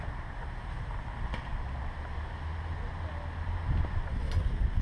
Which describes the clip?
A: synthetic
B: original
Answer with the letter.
B